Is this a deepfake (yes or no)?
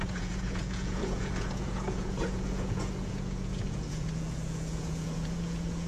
yes